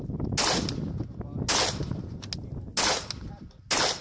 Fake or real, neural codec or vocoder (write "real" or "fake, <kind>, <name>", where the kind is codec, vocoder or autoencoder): real